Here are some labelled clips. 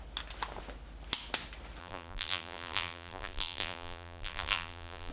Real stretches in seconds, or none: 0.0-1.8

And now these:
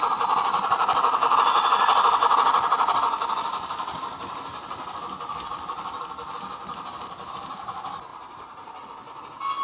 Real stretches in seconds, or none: 0.0-8.1; 8.8-9.6

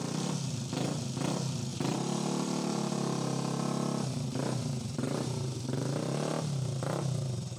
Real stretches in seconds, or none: 0.0-1.7; 6.3-7.6

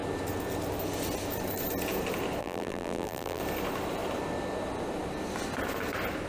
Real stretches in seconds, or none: 0.0-2.4; 3.4-6.3

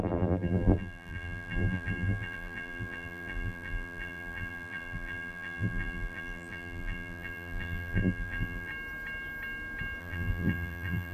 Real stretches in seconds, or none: 8.7-10.0

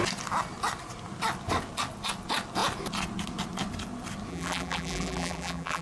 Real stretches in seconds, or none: 0.0-4.3